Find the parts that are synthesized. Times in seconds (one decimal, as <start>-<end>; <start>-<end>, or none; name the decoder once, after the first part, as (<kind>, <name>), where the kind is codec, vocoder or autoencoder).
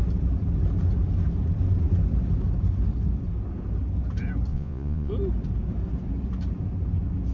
4.5-5.1 (vocoder, Vocos)